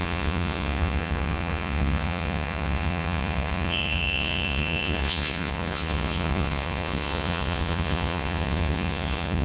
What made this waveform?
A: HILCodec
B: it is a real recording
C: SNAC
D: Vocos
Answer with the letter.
D